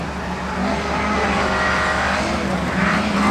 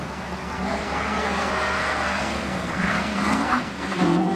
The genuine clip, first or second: first